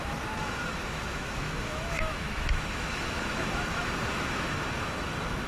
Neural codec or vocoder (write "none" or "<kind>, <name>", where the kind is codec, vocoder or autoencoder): autoencoder, DAC-VAE